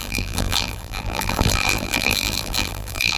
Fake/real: fake